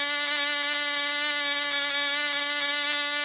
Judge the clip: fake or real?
real